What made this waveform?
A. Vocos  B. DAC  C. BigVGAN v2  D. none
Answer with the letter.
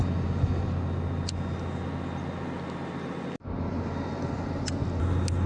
D